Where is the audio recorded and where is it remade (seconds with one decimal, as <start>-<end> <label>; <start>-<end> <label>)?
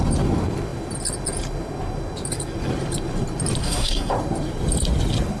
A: 0.0-3.6 recorded; 3.6-4.1 remade; 4.1-5.4 recorded